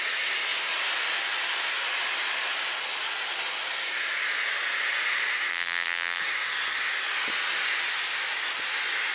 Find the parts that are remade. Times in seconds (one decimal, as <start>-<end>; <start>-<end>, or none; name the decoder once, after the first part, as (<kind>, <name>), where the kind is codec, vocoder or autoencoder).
5.5-6.2 (vocoder, BigVGAN v2)